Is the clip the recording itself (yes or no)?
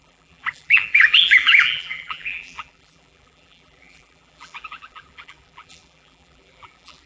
no